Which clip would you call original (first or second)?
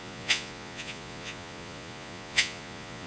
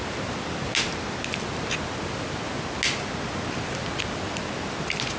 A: second